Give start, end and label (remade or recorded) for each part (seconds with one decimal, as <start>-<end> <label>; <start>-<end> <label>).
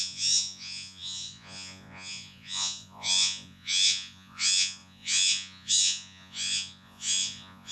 0.0-7.7 remade